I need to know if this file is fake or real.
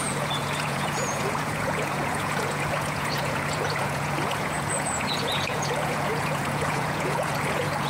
fake